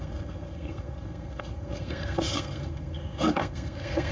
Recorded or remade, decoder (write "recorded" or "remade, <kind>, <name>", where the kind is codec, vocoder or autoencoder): remade, codec, SNAC